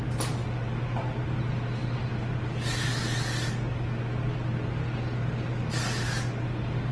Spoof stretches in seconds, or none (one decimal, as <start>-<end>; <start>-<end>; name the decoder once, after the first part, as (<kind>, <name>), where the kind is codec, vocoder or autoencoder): none